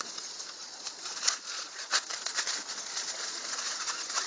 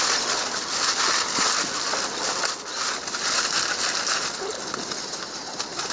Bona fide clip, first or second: second